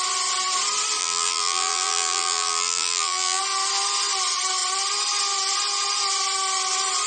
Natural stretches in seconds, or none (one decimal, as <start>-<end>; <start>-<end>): 0.0-1.0; 3.4-7.1